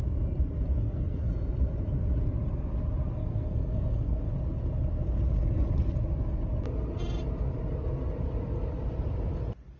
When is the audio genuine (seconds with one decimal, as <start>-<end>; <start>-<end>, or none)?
0.0-0.8; 1.3-3.2; 4.3-9.8